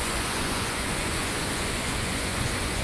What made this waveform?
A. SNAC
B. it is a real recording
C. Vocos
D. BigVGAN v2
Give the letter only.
C